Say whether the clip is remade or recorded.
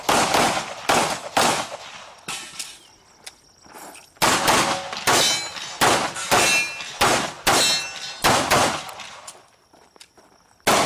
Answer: recorded